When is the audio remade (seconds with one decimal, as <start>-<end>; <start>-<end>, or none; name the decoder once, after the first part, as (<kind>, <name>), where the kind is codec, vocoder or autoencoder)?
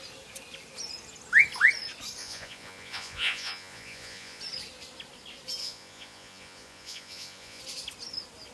2.2-4.4 (vocoder, Vocos); 5.6-7.6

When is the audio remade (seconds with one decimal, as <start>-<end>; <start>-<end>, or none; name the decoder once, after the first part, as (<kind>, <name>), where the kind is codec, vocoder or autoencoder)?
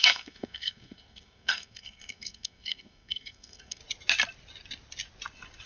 0.0-3.8 (codec, SNAC)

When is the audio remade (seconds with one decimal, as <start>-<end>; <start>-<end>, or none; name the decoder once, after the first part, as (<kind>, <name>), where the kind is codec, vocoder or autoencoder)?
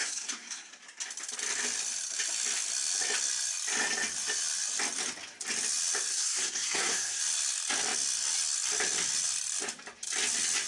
0.0-0.7 (codec, SNAC); 6.1-7.2